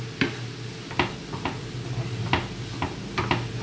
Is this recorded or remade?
recorded